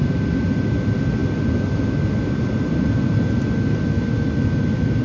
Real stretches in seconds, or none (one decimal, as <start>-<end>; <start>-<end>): 0.0-5.0